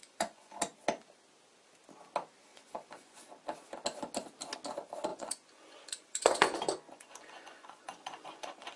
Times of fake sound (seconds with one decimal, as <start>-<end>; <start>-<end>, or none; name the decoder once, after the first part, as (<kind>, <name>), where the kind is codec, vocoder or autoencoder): 0.0-0.6 (vocoder, Vocos); 2.5-3.3; 5.1-8.8